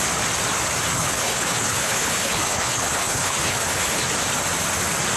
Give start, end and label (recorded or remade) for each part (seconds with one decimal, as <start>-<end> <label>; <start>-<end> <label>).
0.0-0.9 recorded; 0.9-4.0 remade; 4.0-5.2 recorded